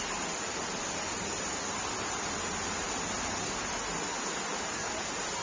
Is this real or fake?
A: real